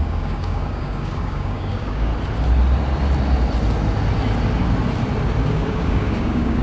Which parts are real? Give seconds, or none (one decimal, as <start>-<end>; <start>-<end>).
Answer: 2.1-5.4